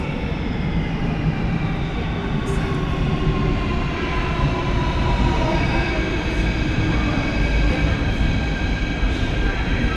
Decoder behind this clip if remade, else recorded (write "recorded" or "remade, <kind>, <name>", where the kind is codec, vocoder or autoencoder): remade, vocoder, BigVGAN v2